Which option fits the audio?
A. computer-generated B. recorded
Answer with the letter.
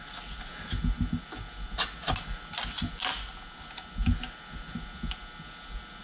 B